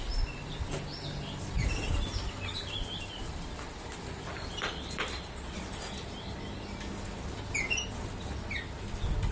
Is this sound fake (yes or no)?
no